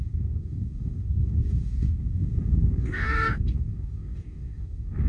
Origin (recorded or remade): remade